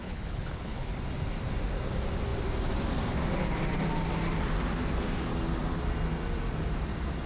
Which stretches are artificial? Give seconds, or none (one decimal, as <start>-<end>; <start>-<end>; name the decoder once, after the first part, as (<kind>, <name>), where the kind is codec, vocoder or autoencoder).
0.0-0.9 (codec, HILCodec)